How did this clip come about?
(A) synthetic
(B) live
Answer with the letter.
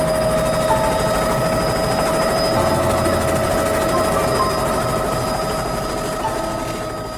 B